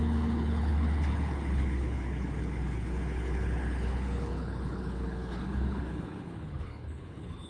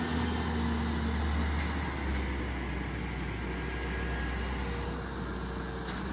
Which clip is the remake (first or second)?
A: first